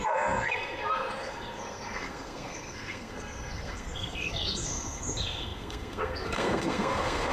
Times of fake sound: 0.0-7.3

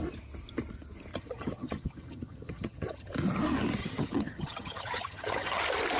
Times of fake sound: 1.1-3.1; 3.8-5.6

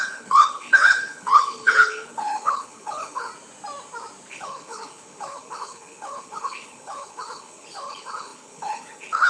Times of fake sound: 0.0-3.3; 4.3-9.3

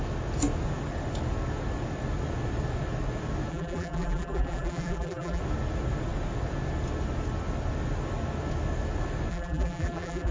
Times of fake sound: 3.5-5.4; 9.3-10.3